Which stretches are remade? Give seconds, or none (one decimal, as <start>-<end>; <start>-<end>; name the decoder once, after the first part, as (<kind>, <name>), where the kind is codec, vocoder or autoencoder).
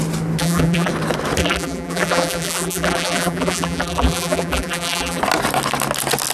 0.4-0.9 (vocoder, BigVGAN v2); 1.4-5.2